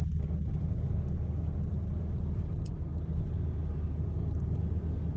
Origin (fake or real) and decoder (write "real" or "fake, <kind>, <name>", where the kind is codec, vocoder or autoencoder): real